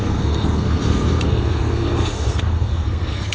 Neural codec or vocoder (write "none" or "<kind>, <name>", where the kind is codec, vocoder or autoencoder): codec, SNAC